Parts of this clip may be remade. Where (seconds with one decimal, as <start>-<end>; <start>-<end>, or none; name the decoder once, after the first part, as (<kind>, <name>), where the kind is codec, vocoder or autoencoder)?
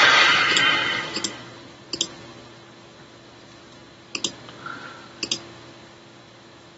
none